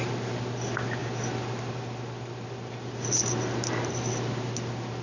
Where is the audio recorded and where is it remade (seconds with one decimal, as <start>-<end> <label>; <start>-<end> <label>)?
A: 0.0-5.0 recorded